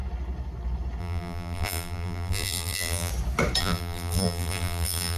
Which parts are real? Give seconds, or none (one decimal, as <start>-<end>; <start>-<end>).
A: 0.0-1.0; 3.1-3.6